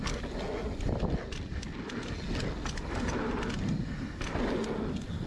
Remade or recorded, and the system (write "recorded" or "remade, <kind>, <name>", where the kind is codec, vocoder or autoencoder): recorded